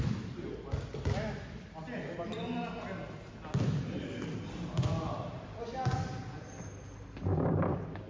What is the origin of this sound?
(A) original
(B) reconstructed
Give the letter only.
A